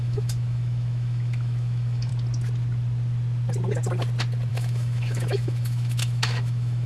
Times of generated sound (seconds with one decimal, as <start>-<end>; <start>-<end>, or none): 0.0-2.1; 4.5-6.9